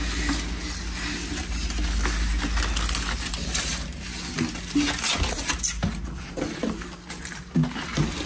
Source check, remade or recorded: recorded